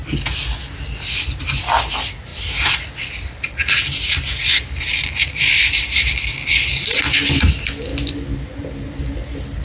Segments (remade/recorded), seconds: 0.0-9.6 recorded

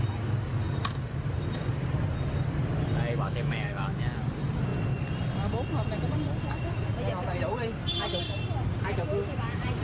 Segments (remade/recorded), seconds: 0.0-3.1 recorded; 3.1-4.2 remade; 4.2-9.8 recorded